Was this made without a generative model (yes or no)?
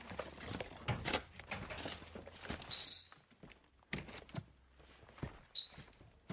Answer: yes